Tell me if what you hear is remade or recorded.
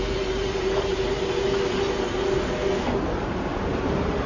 recorded